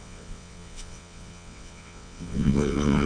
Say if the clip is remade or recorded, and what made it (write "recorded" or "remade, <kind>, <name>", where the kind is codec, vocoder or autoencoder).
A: remade, vocoder, WaveNeXt